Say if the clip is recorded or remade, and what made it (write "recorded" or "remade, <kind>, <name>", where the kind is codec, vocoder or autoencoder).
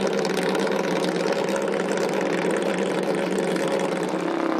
recorded